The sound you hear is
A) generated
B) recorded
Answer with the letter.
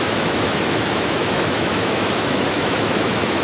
A